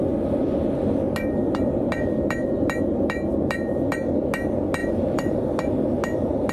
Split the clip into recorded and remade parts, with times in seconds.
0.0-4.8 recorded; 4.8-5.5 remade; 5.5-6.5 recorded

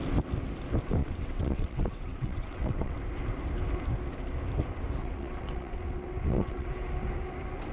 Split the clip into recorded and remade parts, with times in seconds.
0.0-1.0 recorded; 1.0-3.0 remade; 3.0-5.0 recorded; 5.0-6.7 remade; 6.7-7.7 recorded

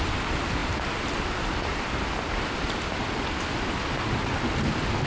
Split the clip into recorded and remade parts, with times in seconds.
0.0-5.1 recorded

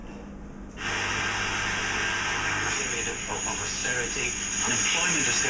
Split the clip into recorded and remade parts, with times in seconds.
0.0-5.5 recorded

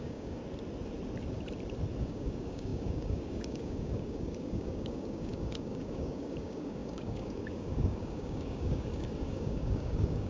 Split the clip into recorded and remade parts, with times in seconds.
0.0-0.4 remade; 0.4-2.0 recorded; 2.0-10.3 remade

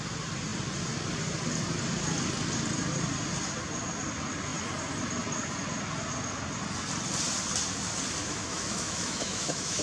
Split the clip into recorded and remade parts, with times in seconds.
0.0-8.2 recorded; 8.2-9.8 remade

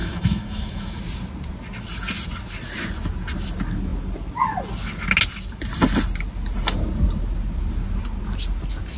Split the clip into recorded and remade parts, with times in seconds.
0.0-1.0 remade; 1.0-9.0 recorded